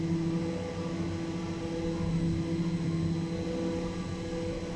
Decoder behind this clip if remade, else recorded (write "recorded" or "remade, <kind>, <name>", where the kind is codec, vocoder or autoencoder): recorded